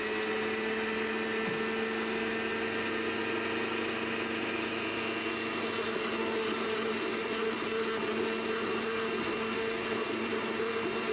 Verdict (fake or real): real